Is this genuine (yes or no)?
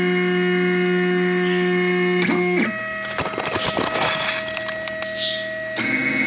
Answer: yes